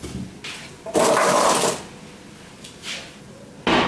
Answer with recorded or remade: recorded